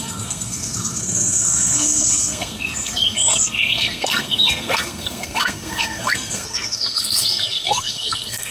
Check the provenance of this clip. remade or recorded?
remade